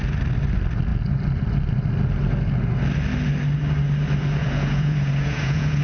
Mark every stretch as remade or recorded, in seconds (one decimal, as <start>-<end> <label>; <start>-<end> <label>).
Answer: 0.0-4.4 recorded; 4.4-5.8 remade